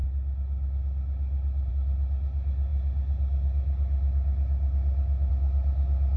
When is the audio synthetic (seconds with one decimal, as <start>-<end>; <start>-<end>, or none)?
none